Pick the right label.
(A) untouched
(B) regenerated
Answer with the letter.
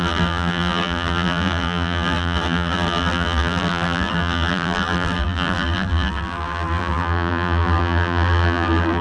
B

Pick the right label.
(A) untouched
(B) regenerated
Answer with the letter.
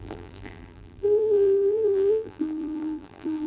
B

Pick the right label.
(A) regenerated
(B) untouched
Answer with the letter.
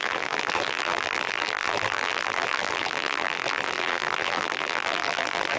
A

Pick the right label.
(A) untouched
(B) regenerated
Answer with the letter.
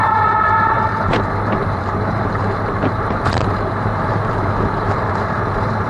B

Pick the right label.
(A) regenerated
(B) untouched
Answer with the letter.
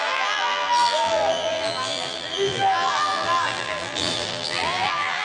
A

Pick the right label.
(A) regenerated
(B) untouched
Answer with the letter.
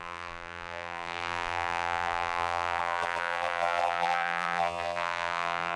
A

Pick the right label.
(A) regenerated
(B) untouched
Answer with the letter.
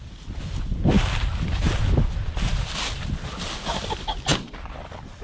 B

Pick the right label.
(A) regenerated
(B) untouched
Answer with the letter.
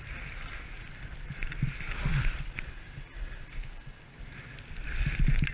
B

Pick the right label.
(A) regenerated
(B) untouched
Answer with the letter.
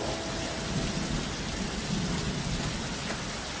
A